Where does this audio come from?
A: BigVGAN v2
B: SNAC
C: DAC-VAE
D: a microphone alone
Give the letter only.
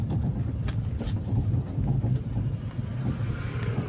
A